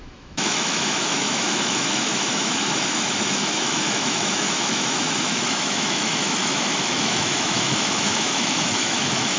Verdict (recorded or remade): remade